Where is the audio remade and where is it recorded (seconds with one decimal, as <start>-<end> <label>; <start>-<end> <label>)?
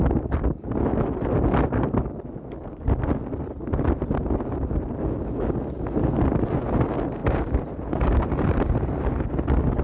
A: 0.0-7.2 recorded; 7.2-9.1 remade; 9.1-9.8 recorded